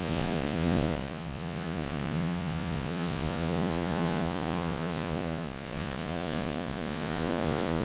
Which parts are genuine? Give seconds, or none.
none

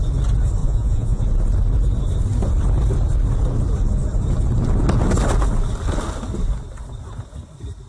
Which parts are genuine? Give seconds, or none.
0.0-0.6; 1.2-7.9

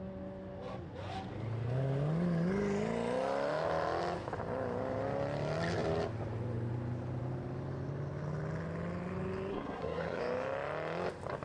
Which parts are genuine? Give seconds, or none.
0.0-9.5; 10.2-11.4

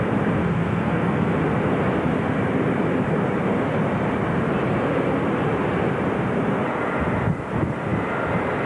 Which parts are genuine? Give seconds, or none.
0.0-0.4; 1.3-8.7